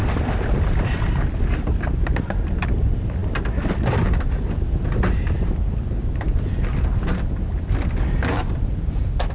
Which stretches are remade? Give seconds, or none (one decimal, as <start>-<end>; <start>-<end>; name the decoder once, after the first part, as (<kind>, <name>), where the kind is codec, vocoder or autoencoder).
none